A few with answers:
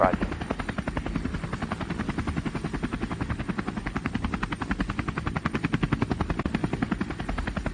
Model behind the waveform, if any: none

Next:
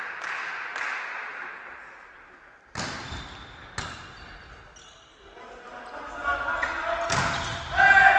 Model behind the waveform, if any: none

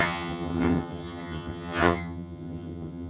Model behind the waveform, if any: vocoder, HiFi-GAN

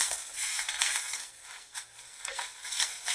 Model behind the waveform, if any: codec, SNAC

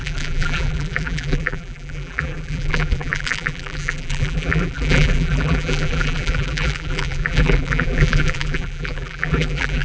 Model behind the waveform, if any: vocoder, BigVGAN v2